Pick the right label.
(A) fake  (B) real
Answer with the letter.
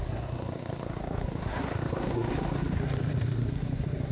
A